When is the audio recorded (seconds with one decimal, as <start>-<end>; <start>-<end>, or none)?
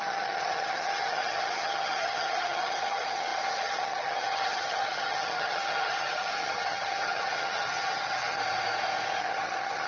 8.4-9.2